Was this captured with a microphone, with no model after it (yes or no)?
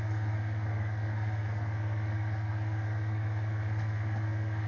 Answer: no